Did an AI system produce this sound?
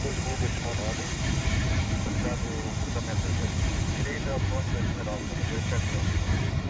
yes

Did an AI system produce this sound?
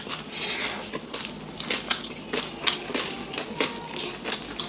no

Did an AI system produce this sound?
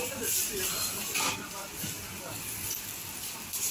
no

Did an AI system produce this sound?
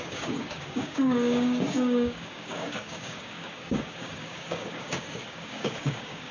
yes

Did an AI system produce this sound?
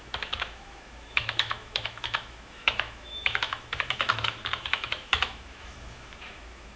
yes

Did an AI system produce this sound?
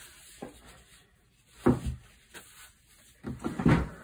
no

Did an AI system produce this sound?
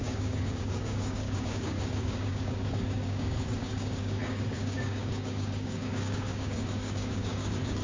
yes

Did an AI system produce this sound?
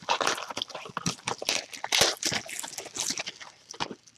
no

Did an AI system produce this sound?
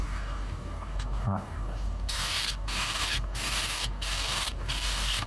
yes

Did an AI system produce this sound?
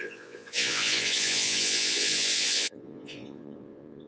yes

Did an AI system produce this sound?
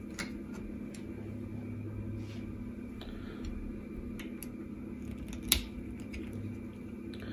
no